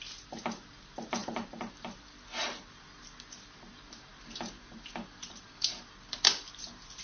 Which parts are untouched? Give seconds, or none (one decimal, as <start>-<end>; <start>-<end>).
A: 0.0-1.2; 3.0-4.1